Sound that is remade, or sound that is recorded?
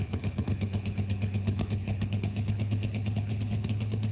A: remade